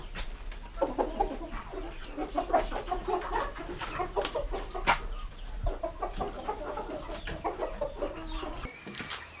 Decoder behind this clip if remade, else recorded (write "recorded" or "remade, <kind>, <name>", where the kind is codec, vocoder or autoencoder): recorded